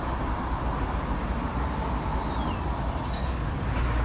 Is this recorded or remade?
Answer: recorded